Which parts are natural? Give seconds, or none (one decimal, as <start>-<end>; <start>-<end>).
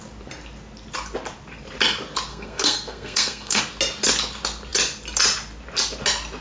0.0-2.3; 3.6-6.4